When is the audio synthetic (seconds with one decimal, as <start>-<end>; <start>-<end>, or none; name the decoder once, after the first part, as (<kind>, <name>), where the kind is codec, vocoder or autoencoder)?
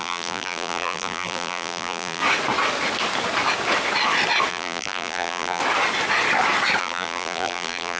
0.0-2.2 (vocoder, BigVGAN v2); 4.5-5.6; 6.8-8.0